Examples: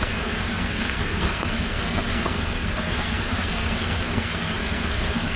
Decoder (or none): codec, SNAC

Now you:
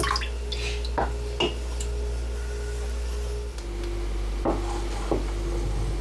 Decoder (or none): none